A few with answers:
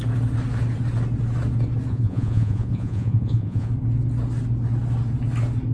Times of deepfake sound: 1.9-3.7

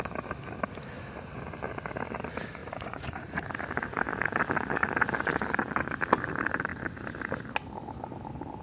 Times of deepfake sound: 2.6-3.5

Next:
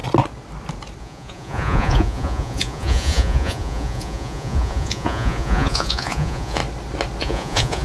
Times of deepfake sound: 1.0-6.6; 7.2-7.8

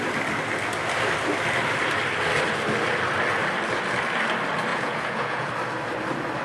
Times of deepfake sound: 4.7-5.5

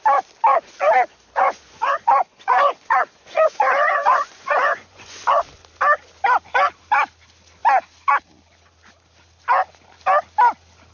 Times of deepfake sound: 0.5-5.3